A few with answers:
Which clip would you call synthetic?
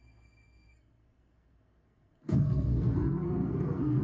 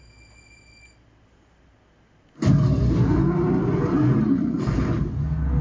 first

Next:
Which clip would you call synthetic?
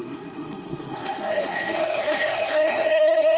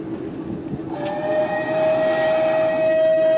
first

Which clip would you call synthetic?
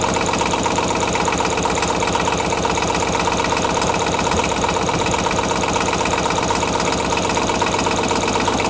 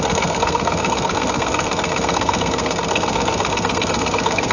second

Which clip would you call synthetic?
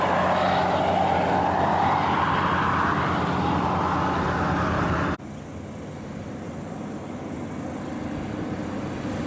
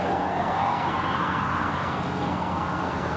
second